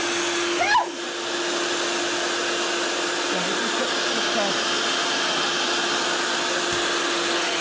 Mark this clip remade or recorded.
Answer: recorded